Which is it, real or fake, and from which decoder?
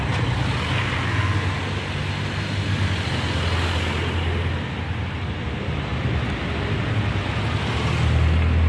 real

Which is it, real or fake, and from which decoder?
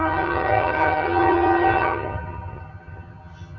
fake, vocoder, HiFi-GAN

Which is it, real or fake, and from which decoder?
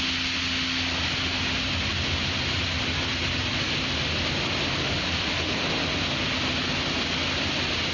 real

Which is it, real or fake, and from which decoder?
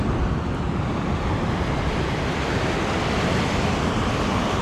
real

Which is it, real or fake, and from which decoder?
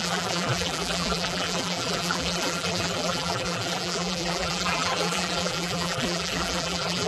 fake, vocoder, BigVGAN v2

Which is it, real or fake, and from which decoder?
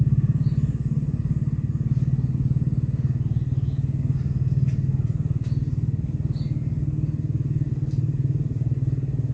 real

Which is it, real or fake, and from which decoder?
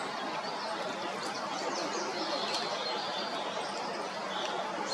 real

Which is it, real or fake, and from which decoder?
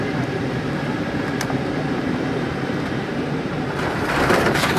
fake, vocoder, BigVGAN v2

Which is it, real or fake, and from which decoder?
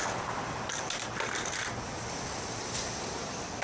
real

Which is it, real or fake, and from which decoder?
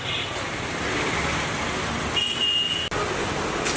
real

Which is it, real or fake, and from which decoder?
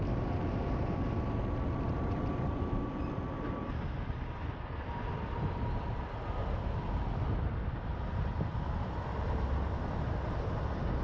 real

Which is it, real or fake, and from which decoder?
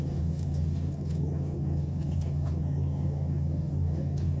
fake, codec, DAC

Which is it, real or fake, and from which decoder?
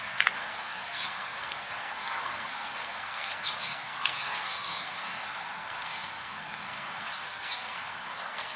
fake, codec, SNAC